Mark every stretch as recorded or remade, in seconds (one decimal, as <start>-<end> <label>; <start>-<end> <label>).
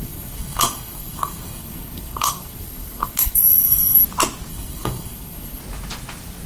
0.0-4.0 remade; 4.0-4.5 recorded; 4.5-5.6 remade; 5.6-6.5 recorded